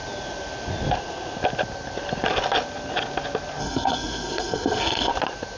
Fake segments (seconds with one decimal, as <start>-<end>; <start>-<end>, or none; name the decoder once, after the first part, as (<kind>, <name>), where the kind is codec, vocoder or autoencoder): 3.6-5.1 (codec, SNAC)